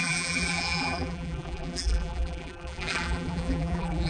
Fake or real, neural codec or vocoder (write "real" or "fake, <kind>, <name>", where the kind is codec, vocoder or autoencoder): fake, vocoder, BigVGAN v2